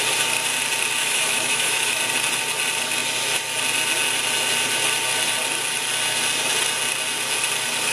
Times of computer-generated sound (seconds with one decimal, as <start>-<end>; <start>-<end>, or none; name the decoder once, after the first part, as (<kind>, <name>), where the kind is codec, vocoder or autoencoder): 1.0-2.0 (autoencoder, DAC-VAE)